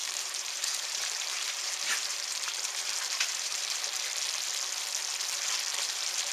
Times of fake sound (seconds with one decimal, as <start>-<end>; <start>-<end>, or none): 0.0-3.8